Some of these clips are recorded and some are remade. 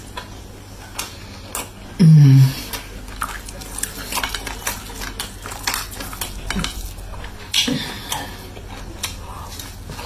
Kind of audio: recorded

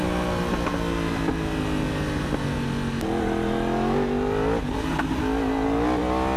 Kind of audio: recorded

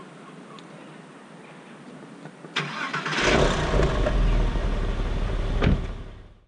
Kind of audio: recorded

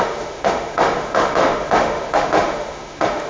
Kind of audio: remade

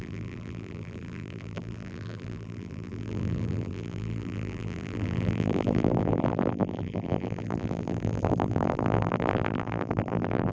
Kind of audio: remade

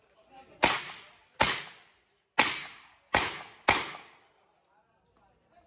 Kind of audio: recorded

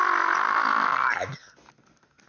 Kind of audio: recorded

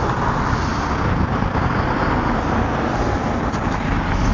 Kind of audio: recorded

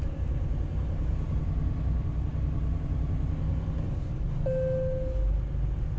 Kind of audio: recorded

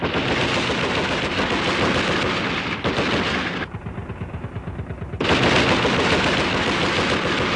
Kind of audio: recorded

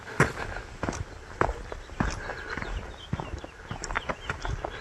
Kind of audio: recorded